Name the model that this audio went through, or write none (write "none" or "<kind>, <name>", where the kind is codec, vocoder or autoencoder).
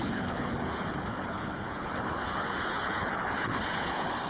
codec, HILCodec